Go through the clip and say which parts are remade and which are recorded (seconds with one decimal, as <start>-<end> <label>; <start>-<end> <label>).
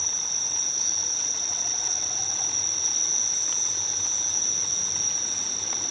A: 0.0-1.0 recorded; 1.0-2.4 remade; 2.4-5.9 recorded